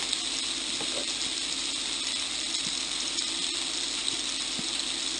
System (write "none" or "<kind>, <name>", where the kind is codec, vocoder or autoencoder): none